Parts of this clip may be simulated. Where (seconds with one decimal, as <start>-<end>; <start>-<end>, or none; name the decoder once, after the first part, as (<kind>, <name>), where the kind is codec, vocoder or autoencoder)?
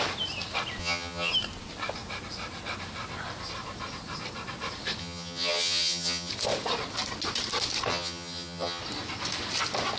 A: 0.8-1.3 (vocoder, HiFi-GAN); 5.0-6.3; 7.9-8.8